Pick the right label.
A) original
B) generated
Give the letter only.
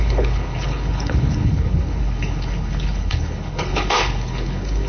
B